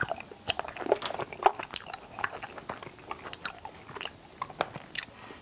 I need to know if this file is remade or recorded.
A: recorded